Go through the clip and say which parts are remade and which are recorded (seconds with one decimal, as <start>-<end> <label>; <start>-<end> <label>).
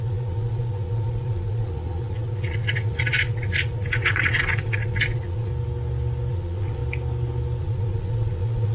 0.0-5.5 remade; 5.5-6.3 recorded; 6.3-6.8 remade; 6.8-7.6 recorded; 7.6-8.7 remade